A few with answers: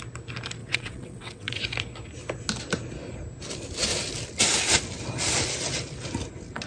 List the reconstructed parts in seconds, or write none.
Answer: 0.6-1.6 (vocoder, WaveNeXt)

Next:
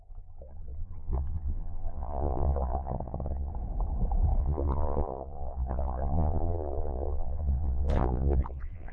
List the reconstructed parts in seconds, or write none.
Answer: 0.0-3.5 (vocoder, Vocos); 4.4-8.9

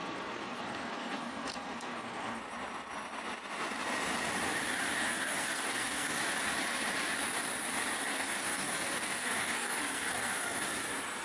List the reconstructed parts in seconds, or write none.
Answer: 0.0-2.4 (codec, SNAC); 5.0-6.2; 8.0-10.7

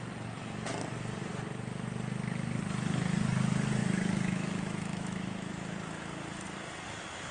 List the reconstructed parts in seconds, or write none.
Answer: 3.8-5.5 (autoencoder, DAC-VAE)

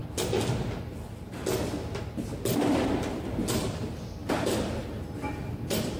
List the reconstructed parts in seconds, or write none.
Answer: 3.6-6.0 (vocoder, BigVGAN v2)

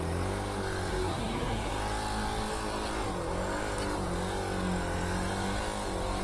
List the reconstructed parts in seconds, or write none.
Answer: 0.9-1.7 (codec, SNAC)

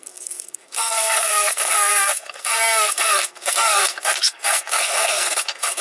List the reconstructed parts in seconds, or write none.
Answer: 0.0-5.8 (codec, SNAC)

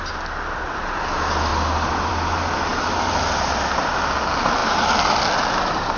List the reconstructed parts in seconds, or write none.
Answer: 4.6-5.2 (vocoder, BigVGAN v2)